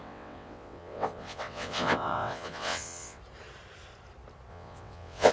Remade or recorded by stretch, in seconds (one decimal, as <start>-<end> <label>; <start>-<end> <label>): 0.0-3.2 remade; 3.2-4.5 recorded; 4.5-5.3 remade